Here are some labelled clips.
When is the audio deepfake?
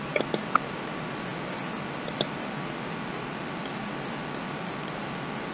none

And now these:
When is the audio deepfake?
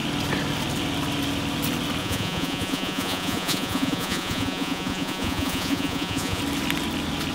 2.0-6.4 (vocoder, Vocos)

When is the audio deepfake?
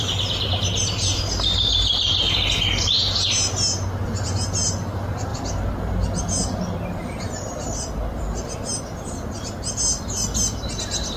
5.3-8.2 (vocoder, BigVGAN v2)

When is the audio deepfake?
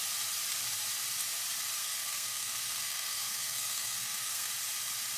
1.8-4.5 (codec, SNAC)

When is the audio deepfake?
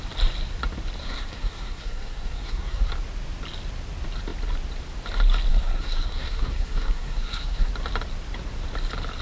1.0-2.9 (codec, SNAC); 5.5-7.7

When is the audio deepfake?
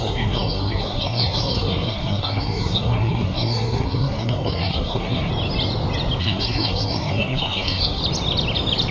0.0-5.3 (codec, SNAC); 6.2-8.0